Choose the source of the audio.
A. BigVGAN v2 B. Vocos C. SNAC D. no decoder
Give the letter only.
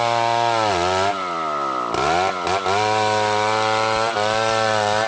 A